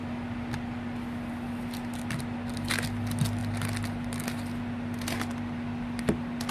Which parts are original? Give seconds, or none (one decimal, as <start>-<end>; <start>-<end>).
0.0-6.5